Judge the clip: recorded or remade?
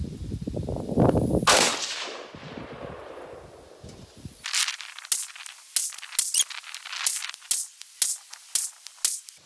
recorded